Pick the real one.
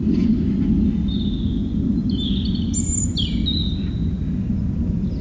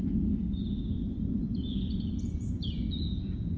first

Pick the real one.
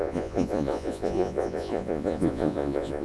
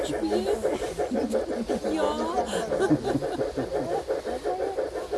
second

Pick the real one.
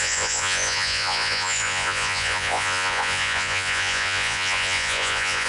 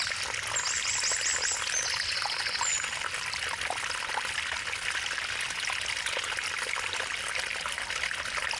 second